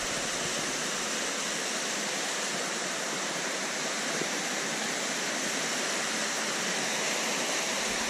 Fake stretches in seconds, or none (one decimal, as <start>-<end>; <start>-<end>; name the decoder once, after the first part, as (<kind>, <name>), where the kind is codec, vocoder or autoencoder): 2.5-4.4 (vocoder, BigVGAN v2); 5.7-6.2